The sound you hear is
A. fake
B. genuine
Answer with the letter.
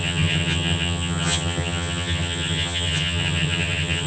A